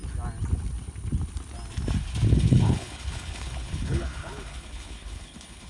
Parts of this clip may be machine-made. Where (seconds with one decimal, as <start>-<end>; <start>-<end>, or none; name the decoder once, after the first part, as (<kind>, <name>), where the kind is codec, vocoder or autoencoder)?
2.3-5.7 (codec, HILCodec)